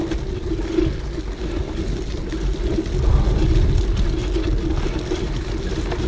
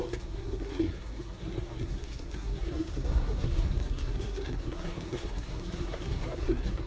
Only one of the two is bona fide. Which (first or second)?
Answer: first